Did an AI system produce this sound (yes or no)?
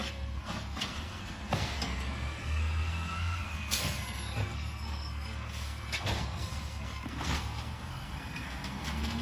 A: yes